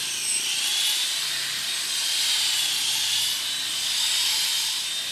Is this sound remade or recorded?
remade